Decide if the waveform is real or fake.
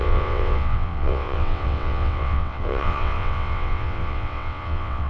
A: fake